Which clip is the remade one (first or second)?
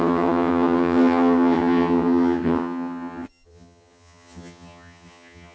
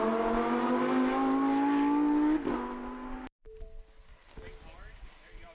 first